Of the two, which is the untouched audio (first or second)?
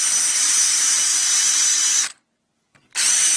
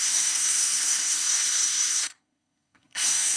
first